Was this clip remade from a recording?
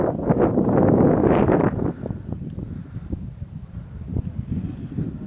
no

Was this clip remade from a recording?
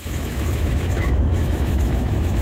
yes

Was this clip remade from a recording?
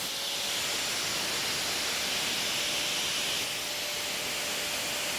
no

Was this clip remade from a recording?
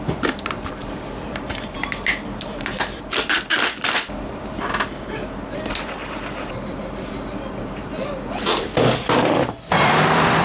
yes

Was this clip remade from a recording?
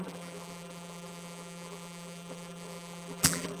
yes